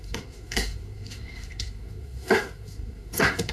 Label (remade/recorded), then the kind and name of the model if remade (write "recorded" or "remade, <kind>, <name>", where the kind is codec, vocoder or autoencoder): remade, codec, SNAC